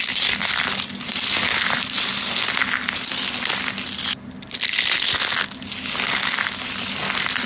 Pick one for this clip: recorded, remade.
recorded